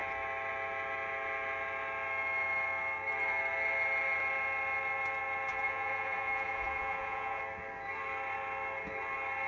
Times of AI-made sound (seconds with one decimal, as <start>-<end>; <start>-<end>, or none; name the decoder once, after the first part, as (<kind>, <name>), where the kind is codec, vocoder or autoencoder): 5.5-7.4 (vocoder, Vocos)